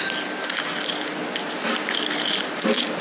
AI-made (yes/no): no